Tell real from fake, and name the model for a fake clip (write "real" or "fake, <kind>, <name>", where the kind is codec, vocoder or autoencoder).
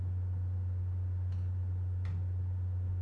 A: real